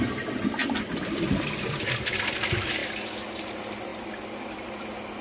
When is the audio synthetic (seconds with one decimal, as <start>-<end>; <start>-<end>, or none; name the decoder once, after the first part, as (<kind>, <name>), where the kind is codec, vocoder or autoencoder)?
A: 3.9-4.7 (vocoder, BigVGAN v2)